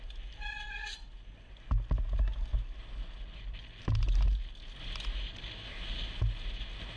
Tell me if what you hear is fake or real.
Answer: real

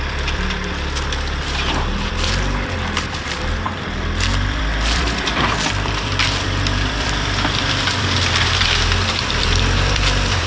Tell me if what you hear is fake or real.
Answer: fake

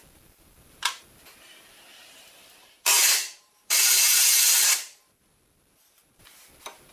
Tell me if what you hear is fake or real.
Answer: fake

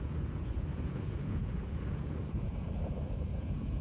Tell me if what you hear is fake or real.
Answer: fake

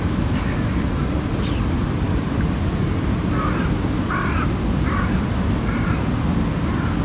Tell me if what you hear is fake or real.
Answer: real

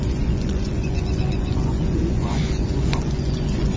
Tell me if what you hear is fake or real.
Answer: fake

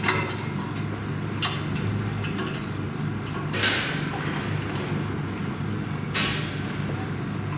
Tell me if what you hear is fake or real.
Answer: real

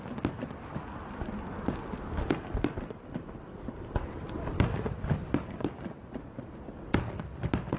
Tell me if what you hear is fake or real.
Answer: real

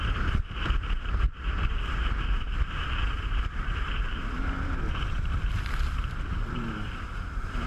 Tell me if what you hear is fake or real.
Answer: fake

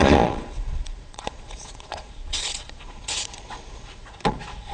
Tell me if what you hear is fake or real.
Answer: fake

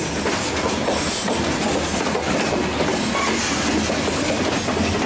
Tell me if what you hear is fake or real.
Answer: real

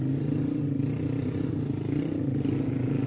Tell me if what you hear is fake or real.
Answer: real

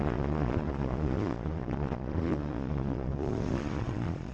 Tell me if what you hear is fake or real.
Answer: fake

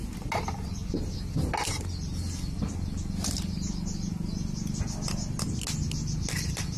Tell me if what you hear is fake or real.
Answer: real